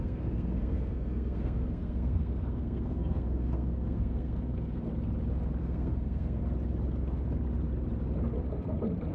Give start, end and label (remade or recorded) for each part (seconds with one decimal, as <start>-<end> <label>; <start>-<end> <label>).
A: 0.0-4.9 remade; 4.9-5.6 recorded; 5.6-6.4 remade; 6.4-9.1 recorded